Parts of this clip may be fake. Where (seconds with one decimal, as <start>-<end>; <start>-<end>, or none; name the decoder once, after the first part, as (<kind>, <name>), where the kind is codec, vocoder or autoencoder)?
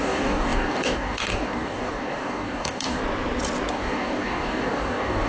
0.0-3.0 (codec, DAC); 3.7-5.3